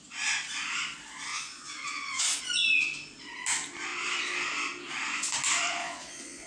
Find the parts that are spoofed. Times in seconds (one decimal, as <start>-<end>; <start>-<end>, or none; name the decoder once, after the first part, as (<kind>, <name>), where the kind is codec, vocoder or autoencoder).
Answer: 1.3-2.4 (vocoder, Vocos); 5.8-6.5